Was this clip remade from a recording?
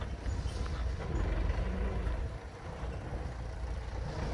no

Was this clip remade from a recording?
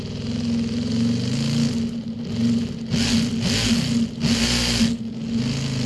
no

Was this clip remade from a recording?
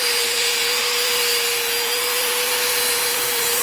yes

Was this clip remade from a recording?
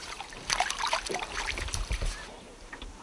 yes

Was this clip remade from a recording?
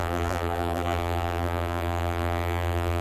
yes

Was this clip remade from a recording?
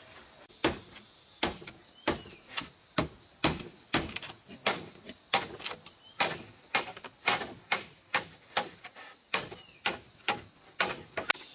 no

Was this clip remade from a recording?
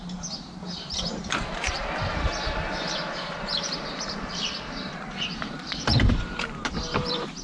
yes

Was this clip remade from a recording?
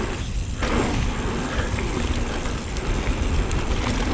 no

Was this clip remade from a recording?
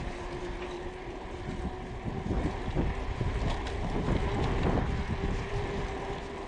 no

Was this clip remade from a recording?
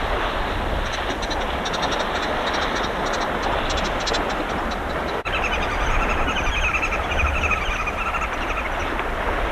no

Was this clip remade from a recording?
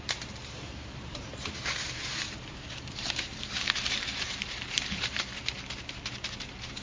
yes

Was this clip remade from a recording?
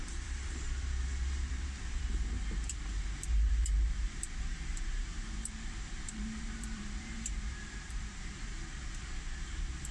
yes